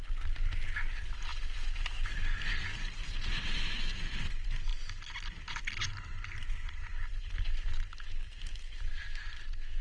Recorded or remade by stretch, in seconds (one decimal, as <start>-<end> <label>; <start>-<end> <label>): 0.0-9.8 recorded

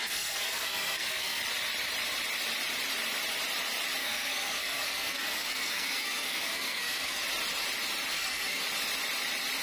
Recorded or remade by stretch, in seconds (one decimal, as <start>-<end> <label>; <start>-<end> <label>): 0.0-1.4 remade; 1.4-4.0 recorded; 4.0-7.2 remade; 7.2-8.1 recorded; 8.1-8.6 remade; 8.6-9.6 recorded

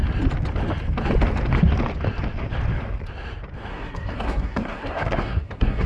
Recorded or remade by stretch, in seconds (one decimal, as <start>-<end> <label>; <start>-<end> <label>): 0.0-3.7 recorded; 3.7-5.9 remade